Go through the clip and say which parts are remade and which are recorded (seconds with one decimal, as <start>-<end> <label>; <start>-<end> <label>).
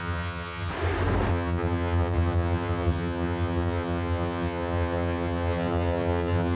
0.0-0.7 remade; 0.7-1.3 recorded; 1.3-6.5 remade